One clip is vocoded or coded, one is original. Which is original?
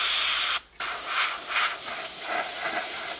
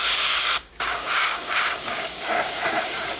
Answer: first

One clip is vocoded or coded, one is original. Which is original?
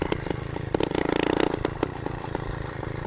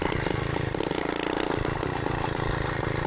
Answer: second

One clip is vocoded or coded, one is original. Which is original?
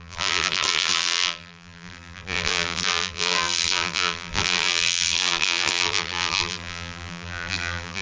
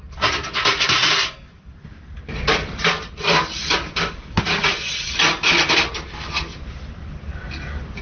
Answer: second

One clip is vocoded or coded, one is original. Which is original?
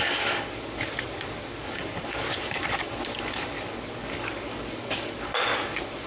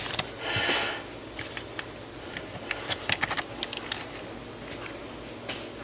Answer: second